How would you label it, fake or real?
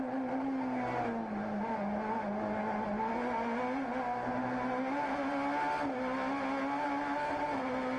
real